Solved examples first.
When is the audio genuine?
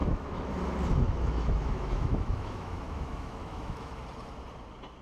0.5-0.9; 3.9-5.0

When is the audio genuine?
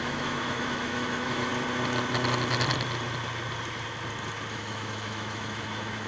1.5-4.5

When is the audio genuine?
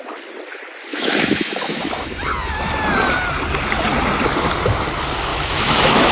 0.0-0.9; 2.3-5.3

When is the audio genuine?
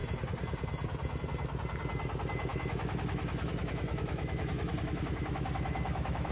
0.0-2.5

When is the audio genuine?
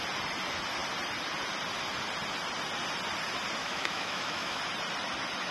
0.0-3.6; 4.6-5.5